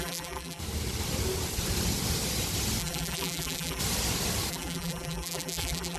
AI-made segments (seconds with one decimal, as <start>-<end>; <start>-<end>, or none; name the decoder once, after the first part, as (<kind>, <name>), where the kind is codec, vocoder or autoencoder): 0.0-0.6 (vocoder, BigVGAN v2); 2.8-3.8; 4.5-6.0